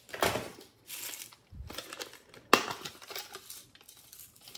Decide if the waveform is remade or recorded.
recorded